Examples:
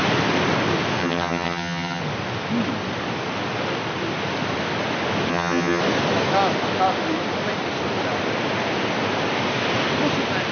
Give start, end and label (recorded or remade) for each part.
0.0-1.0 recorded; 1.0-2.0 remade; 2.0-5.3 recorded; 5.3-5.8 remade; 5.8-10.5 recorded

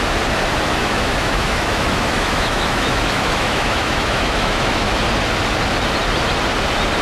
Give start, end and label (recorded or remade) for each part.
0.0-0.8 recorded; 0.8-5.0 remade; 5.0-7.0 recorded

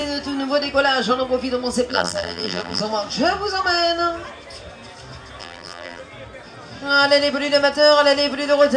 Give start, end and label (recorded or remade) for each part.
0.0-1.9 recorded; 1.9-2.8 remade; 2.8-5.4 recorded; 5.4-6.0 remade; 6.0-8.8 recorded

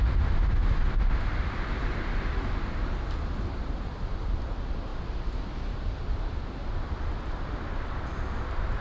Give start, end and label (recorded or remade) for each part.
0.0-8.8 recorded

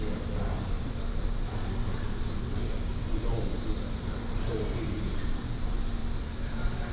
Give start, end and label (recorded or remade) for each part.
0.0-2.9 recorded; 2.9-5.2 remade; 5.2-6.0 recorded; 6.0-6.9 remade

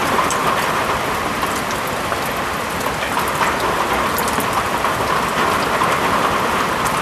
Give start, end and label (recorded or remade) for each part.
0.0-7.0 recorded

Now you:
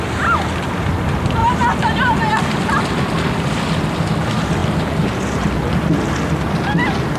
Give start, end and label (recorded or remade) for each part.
0.0-1.4 recorded; 1.4-2.3 remade; 2.3-4.6 recorded; 4.6-5.6 remade; 5.6-7.2 recorded